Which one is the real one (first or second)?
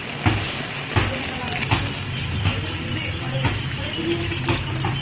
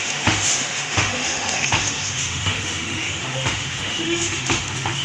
first